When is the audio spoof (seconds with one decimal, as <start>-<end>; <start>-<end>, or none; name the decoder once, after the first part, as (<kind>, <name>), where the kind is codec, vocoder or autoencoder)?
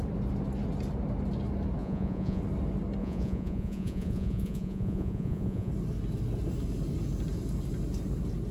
1.8-2.4 (vocoder, Vocos); 3.0-5.7